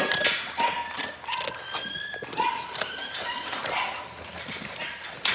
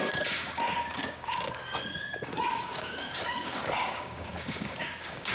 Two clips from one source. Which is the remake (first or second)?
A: second